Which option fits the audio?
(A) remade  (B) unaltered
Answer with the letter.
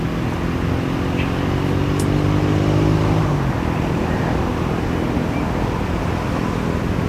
B